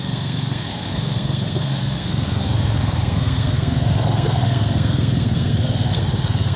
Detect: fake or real fake